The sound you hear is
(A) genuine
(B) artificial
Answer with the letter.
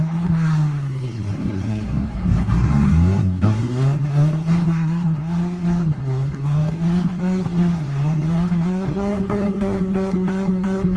B